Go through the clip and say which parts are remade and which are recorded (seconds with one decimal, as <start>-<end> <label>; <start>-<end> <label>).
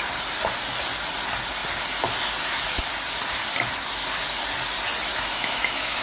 0.0-5.1 recorded; 5.1-6.0 remade